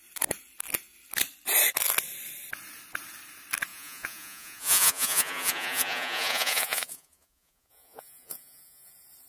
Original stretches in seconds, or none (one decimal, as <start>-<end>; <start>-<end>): 0.0-3.7; 8.9-9.3